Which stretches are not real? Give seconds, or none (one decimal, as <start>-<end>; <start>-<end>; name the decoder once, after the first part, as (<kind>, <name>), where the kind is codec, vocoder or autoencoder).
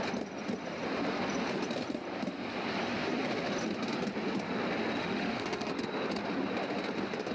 5.0-5.7 (autoencoder, DAC-VAE)